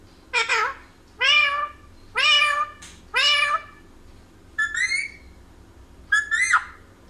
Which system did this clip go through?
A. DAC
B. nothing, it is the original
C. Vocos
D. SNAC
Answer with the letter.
B